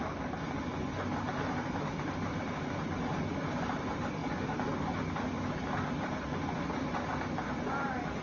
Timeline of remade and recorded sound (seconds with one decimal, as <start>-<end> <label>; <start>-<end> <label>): 0.0-8.2 recorded